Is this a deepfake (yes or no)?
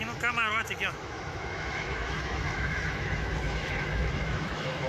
yes